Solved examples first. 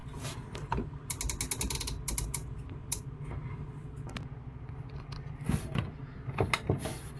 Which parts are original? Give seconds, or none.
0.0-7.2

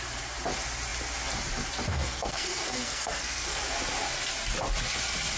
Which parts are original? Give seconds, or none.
0.0-1.9; 3.6-5.4

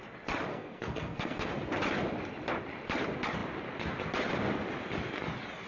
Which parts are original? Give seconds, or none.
0.0-0.5; 1.5-5.7